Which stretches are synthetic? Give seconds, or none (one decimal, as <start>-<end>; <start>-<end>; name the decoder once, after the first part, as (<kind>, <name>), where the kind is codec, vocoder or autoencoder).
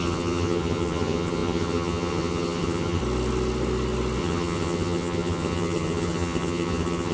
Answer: 0.0-3.0 (vocoder, HiFi-GAN); 4.2-7.1